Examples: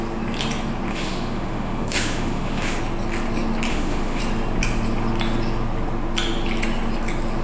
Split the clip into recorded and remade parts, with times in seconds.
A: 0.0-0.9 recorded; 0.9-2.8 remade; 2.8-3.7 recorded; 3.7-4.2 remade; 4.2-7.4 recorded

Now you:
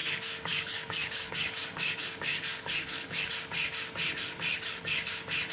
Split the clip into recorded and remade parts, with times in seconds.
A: 0.0-3.3 remade; 3.3-4.5 recorded; 4.5-5.1 remade; 5.1-5.5 recorded

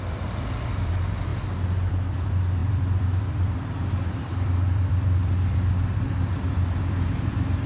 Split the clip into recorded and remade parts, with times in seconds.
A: 0.0-1.3 remade; 1.3-1.9 recorded; 1.9-7.7 remade

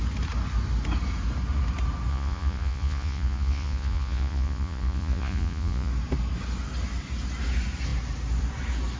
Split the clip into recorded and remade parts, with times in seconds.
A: 0.0-2.1 recorded; 2.1-5.9 remade; 5.9-9.0 recorded